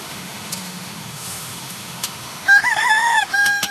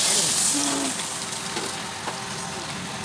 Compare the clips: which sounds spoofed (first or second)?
first